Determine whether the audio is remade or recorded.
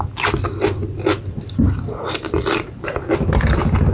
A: recorded